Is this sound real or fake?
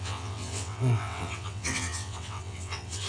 fake